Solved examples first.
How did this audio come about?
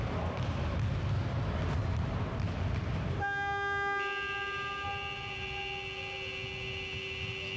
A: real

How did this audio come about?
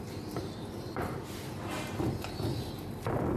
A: real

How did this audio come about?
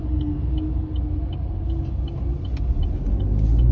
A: real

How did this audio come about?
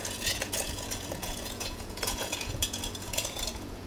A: fake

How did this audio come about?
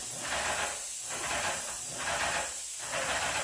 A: real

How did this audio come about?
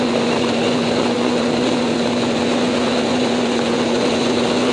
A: fake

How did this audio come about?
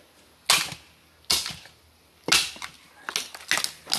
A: real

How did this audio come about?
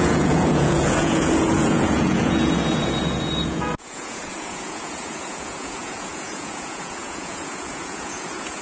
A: fake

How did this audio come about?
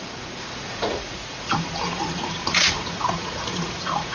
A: fake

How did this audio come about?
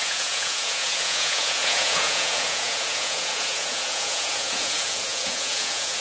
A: fake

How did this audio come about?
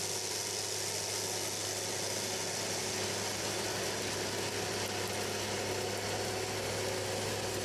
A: real